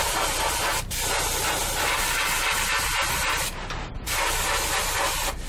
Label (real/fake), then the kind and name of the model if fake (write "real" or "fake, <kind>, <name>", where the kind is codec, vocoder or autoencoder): real